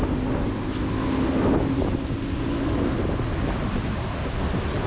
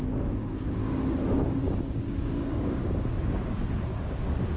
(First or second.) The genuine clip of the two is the first